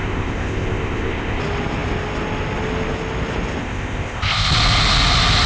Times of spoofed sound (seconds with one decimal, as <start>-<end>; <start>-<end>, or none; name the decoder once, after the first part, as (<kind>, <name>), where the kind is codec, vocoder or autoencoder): 0.0-1.4 (codec, ZipCodec); 3.6-4.5